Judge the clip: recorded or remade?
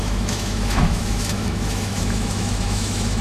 remade